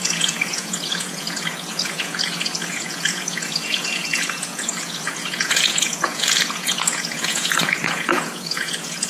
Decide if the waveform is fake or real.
fake